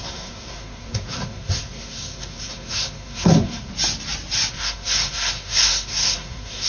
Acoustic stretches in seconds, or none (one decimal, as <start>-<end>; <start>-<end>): 3.7-4.5